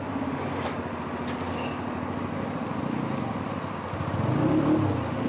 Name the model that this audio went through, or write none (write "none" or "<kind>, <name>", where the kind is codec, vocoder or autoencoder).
none